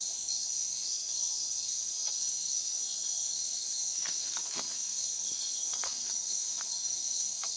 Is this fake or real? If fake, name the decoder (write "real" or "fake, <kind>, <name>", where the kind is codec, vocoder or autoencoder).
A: fake, codec, SNAC